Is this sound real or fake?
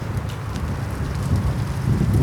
real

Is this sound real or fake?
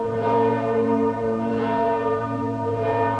fake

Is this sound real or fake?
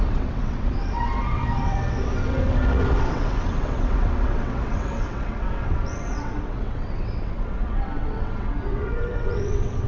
fake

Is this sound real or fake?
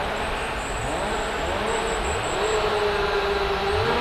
real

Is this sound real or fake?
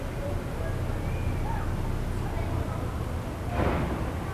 real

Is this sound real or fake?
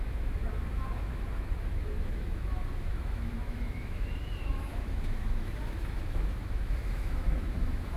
fake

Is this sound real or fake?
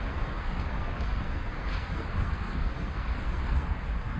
fake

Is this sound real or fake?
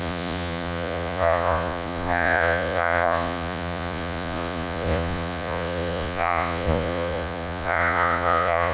fake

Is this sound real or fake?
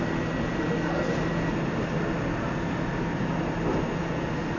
real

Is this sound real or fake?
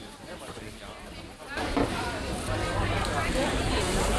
real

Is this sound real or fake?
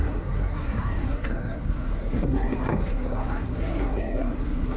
fake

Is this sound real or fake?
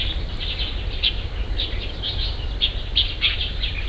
real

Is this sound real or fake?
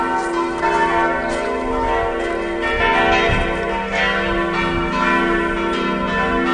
real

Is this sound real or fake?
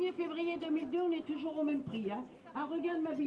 real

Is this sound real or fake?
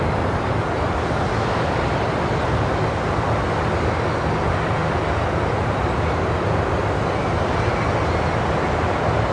real